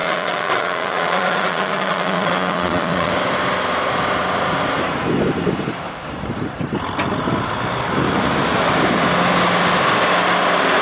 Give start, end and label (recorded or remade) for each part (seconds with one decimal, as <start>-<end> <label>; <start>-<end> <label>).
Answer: 0.0-3.1 remade; 3.1-10.8 recorded